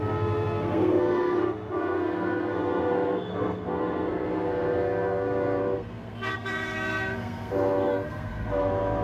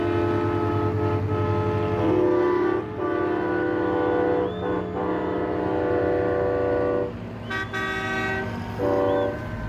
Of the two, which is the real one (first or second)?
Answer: second